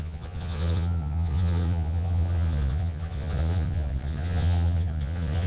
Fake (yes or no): yes